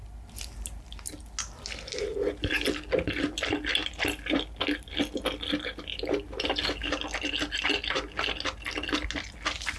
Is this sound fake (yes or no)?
no